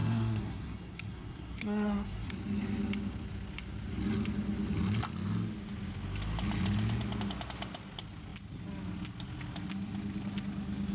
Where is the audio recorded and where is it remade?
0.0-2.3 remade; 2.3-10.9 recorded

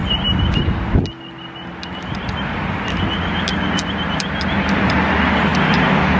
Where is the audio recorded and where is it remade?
0.0-6.2 recorded

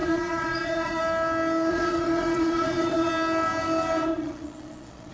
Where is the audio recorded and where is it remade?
0.0-1.0 remade; 1.0-1.7 recorded; 1.7-3.1 remade; 3.1-4.1 recorded; 4.1-5.1 remade

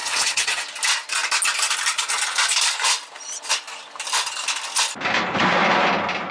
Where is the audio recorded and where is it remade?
0.0-0.6 remade; 0.6-6.3 recorded

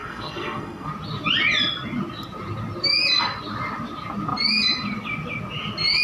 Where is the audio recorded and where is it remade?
0.0-0.9 remade; 0.9-6.0 recorded

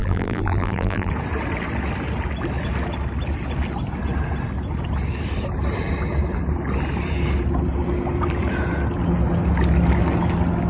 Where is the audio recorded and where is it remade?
0.0-1.1 remade; 1.1-10.7 recorded

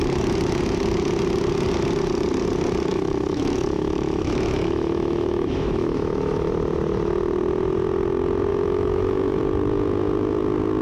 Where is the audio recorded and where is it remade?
0.0-2.9 recorded; 2.9-6.5 remade; 6.5-8.5 recorded; 8.5-9.4 remade; 9.4-10.8 recorded